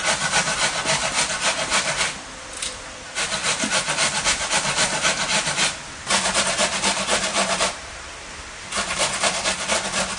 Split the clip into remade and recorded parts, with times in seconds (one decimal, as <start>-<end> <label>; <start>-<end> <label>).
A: 0.0-7.3 recorded; 7.3-9.2 remade; 9.2-10.2 recorded